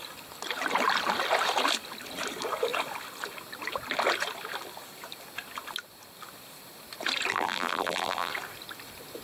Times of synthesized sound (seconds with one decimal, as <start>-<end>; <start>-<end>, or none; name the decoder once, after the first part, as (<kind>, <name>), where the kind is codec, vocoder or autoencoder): 7.3-8.3 (vocoder, BigVGAN v2)